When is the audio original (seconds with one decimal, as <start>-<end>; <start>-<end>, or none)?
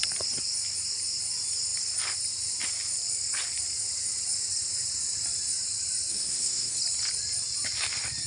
0.0-6.1; 6.8-8.3